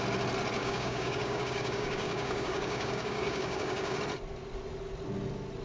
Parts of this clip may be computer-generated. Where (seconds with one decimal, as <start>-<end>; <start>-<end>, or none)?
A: 0.6-4.0